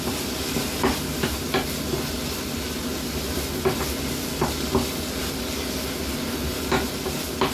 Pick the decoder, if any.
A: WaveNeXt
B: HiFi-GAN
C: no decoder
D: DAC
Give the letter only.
C